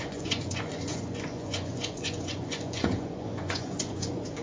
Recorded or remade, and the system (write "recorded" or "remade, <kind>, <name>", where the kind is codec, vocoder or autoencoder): remade, vocoder, Vocos